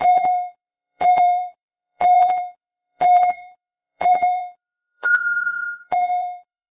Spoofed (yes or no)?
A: yes